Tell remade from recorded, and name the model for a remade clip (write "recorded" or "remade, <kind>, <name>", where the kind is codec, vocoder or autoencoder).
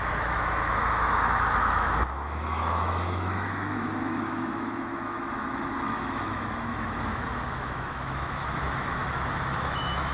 remade, autoencoder, DAC-VAE